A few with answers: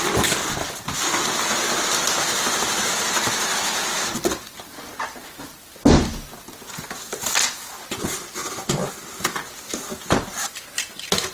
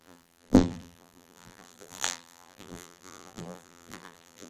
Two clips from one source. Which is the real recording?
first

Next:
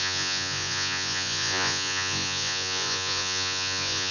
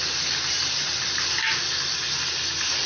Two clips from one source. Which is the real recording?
second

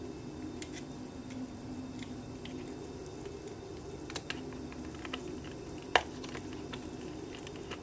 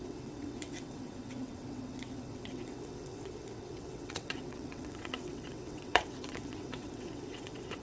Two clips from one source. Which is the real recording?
first